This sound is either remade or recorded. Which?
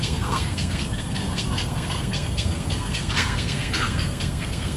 remade